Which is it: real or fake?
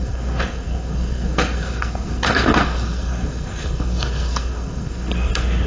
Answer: fake